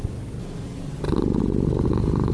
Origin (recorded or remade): recorded